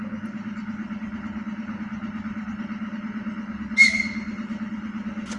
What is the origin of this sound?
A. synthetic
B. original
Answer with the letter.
B